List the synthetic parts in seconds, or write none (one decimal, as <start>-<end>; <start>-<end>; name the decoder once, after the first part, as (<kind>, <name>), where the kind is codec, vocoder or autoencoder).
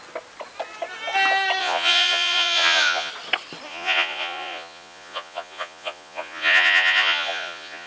1.6-3.1 (vocoder, Vocos); 3.7-7.9